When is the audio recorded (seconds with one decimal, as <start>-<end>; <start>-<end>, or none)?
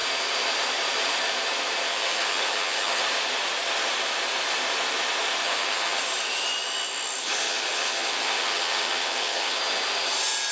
0.0-1.9; 3.0-5.4; 6.0-7.2; 9.6-10.5